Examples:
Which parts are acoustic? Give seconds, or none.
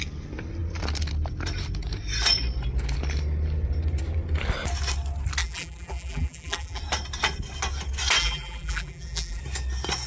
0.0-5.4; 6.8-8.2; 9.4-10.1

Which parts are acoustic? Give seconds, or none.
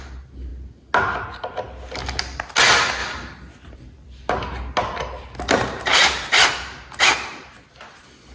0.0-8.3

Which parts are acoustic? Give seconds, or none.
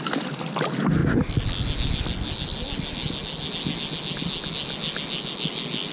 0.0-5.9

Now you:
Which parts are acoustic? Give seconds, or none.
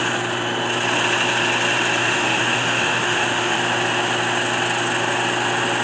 0.0-2.0; 3.6-5.8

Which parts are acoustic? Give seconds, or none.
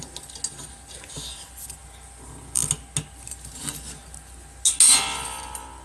0.0-1.8; 2.7-5.8